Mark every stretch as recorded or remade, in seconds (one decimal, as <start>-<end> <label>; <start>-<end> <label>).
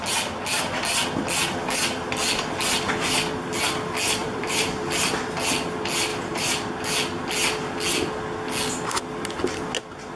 0.0-4.2 recorded; 4.2-4.7 remade; 4.7-6.1 recorded; 6.1-6.7 remade; 6.7-10.2 recorded